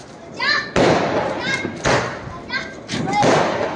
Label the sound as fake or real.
real